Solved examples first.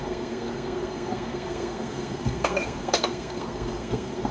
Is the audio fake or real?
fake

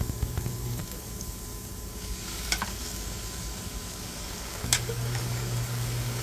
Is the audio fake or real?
fake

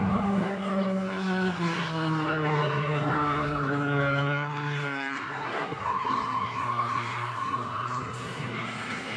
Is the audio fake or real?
fake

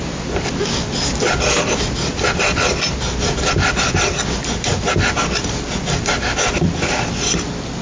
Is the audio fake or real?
real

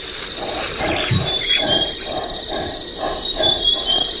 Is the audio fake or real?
real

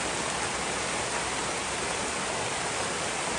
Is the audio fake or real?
real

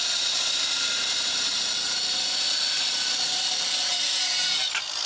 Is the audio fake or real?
real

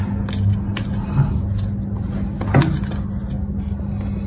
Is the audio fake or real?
real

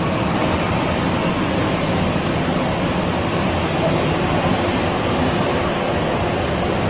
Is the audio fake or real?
real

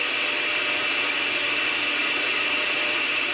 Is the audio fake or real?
real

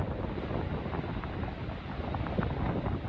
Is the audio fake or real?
real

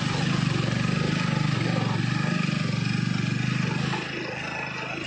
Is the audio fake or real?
real